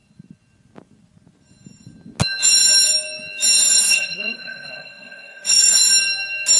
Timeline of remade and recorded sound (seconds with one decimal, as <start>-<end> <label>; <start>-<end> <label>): 0.0-3.8 recorded; 3.8-5.8 remade; 5.8-6.6 recorded